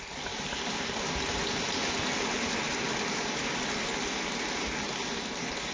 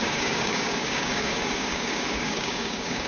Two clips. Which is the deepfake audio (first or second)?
second